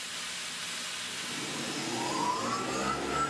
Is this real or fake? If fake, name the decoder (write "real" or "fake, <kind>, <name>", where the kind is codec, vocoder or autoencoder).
real